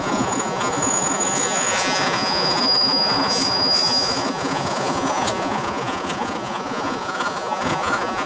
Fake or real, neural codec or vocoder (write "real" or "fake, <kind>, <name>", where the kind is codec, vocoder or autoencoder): fake, vocoder, Vocos